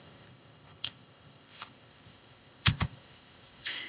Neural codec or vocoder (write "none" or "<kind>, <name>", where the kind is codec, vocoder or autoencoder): codec, ZipCodec